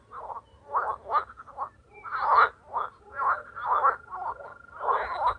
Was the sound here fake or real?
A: real